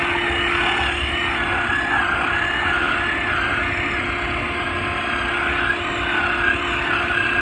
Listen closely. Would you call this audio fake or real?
real